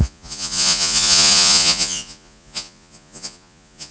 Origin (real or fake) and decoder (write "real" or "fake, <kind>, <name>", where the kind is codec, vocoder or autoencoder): fake, vocoder, Vocos